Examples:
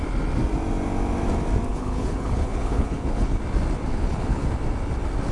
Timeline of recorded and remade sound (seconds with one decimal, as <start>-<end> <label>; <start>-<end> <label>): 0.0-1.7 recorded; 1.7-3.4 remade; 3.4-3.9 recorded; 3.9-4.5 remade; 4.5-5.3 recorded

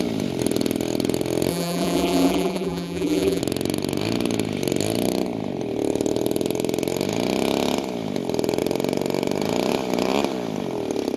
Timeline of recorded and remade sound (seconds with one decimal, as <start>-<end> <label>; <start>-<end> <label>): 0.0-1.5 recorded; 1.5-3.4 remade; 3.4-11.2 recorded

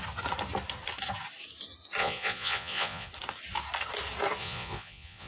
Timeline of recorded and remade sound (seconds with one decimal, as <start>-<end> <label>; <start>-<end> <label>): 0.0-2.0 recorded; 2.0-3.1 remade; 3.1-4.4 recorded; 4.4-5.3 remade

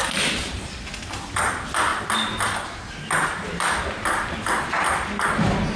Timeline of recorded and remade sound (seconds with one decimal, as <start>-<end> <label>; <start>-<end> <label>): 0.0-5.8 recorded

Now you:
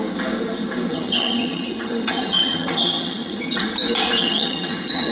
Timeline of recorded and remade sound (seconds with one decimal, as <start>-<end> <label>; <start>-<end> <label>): 0.0-0.9 recorded; 0.9-3.6 remade; 3.6-4.2 recorded; 4.2-5.1 remade

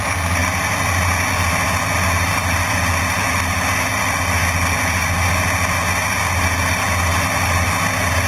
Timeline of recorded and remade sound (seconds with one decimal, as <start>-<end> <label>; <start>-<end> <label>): 0.0-8.3 recorded

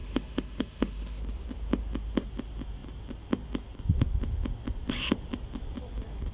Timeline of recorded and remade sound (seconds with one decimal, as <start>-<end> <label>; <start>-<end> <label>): 0.0-1.2 remade; 1.2-6.3 recorded

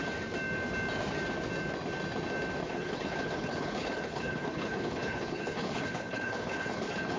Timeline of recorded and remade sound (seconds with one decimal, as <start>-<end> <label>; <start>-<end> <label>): 0.0-2.6 recorded; 2.6-7.2 remade